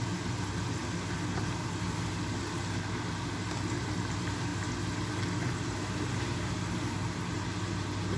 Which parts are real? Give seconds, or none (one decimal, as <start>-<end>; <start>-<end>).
0.0-8.2